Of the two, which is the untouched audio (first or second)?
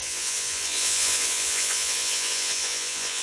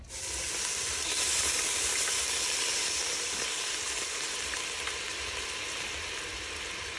second